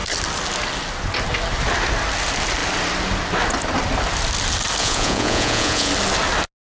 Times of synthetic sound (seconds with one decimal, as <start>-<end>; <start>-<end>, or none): 4.8-5.9